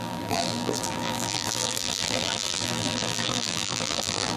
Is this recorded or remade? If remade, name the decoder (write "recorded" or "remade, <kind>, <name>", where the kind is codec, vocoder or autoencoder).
remade, vocoder, BigVGAN v2